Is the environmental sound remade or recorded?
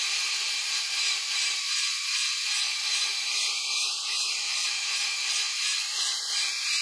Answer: remade